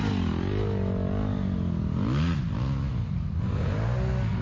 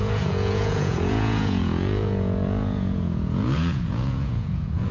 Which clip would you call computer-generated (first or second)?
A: second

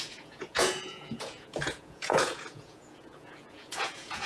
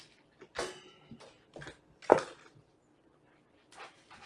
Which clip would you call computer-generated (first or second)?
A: first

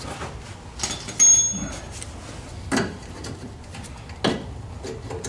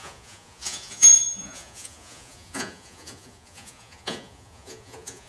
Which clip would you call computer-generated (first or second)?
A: second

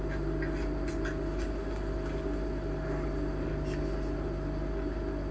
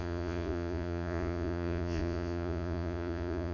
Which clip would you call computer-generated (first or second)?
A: second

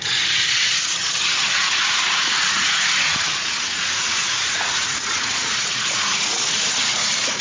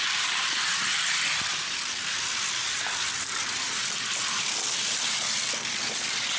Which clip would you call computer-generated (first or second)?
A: first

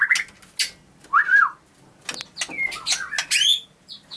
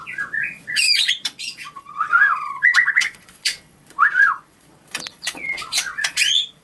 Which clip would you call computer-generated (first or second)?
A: second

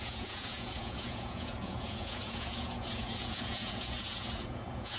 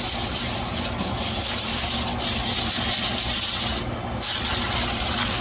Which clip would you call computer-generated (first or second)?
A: first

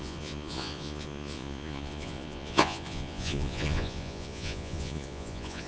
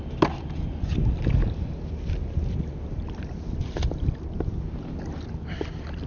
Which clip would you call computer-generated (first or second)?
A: first